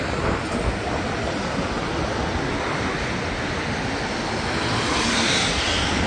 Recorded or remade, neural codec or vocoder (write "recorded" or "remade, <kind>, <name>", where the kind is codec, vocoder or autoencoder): recorded